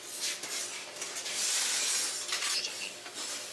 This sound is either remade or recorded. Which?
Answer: recorded